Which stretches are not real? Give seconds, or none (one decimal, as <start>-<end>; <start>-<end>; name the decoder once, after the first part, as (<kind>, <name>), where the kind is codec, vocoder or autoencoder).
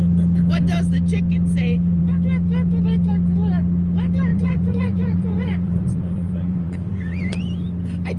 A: 4.3-7.4 (vocoder, Vocos)